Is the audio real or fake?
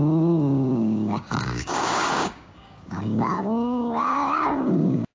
fake